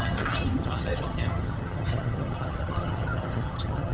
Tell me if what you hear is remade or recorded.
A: remade